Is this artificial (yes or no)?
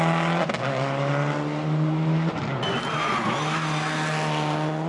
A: no